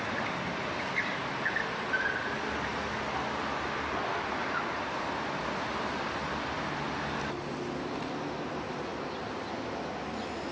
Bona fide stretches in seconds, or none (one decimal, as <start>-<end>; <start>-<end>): 0.0-10.5